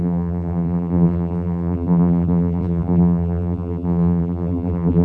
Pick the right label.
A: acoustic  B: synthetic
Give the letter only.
B